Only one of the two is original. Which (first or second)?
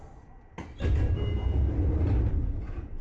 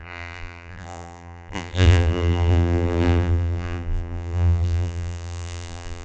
first